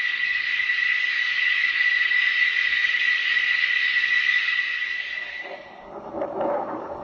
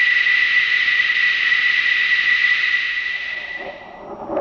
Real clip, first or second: second